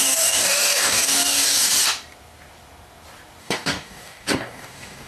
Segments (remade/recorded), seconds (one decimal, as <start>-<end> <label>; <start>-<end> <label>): 0.0-1.7 remade; 1.7-3.4 recorded; 3.4-5.1 remade